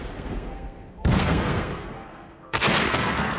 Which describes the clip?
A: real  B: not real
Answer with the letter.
B